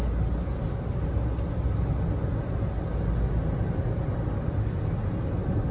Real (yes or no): yes